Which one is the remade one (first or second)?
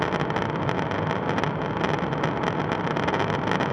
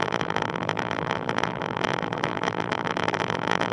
second